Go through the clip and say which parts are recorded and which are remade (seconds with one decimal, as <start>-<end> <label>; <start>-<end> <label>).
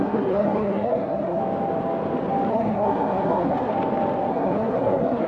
0.0-1.4 remade; 1.4-2.5 recorded; 2.5-3.7 remade; 3.7-4.3 recorded; 4.3-5.3 remade